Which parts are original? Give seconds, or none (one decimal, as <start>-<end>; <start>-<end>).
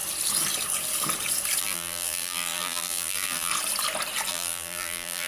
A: 0.0-1.6; 3.5-4.3